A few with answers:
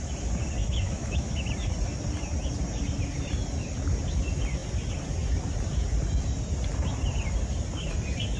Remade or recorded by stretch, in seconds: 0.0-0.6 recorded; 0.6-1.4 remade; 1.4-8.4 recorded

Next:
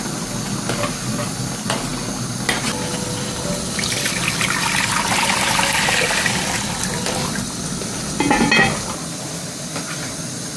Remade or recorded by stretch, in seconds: 0.0-10.6 recorded

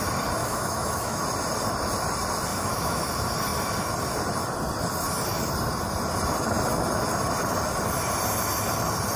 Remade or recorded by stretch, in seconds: 0.0-0.4 recorded; 0.4-1.2 remade; 1.2-2.5 recorded; 2.5-3.0 remade; 3.0-9.2 recorded

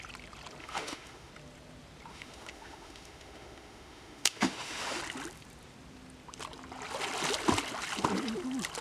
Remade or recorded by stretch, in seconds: 0.0-0.6 recorded; 0.6-1.3 remade; 1.3-2.1 recorded; 2.1-5.0 remade; 5.0-8.8 recorded

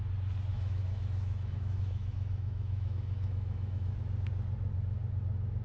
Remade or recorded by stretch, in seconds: 0.0-0.5 recorded; 0.5-3.9 remade; 3.9-5.6 recorded

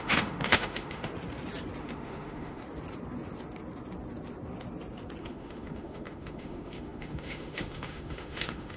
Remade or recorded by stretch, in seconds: 0.0-1.1 remade; 1.1-1.8 recorded; 1.8-2.6 remade; 2.6-5.2 recorded; 5.2-8.8 remade

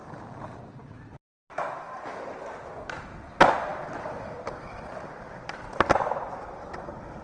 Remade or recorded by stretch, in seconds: 0.0-7.2 recorded

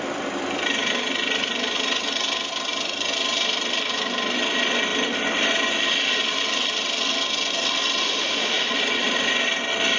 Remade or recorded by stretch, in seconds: 0.0-8.0 recorded; 8.0-8.7 remade; 8.7-10.0 recorded